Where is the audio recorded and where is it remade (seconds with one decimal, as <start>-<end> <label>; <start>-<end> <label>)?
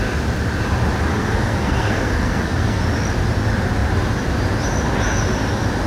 0.0-1.1 recorded; 1.1-2.8 remade; 2.8-5.9 recorded